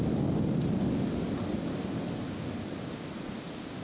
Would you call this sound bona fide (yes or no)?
yes